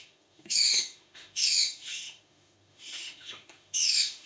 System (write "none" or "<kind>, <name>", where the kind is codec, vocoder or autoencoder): autoencoder, DAC-VAE